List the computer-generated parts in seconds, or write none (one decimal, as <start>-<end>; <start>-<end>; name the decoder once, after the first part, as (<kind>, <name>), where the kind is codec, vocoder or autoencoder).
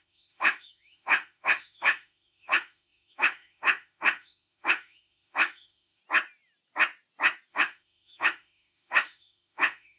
0.0-6.0 (autoencoder, DAC-VAE); 7.5-10.0